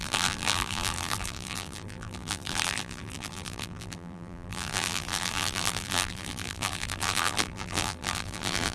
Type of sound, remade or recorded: remade